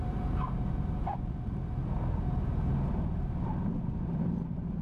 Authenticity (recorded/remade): recorded